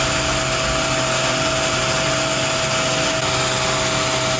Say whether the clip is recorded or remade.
recorded